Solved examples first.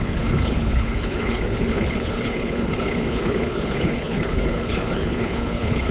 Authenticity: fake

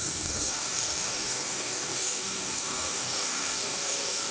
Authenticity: fake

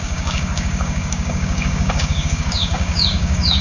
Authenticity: fake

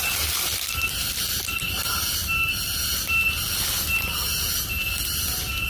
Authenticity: real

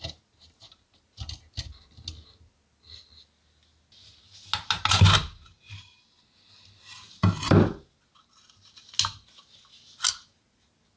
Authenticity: real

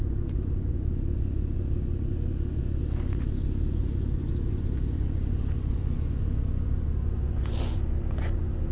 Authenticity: fake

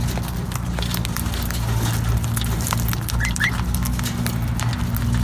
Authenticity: real